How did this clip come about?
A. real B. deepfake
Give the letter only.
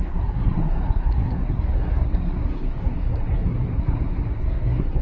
B